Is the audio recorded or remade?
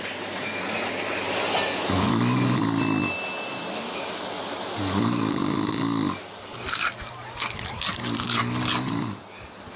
recorded